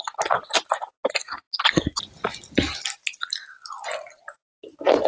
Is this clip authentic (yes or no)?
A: yes